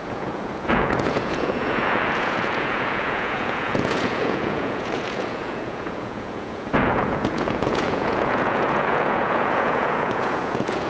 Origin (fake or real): fake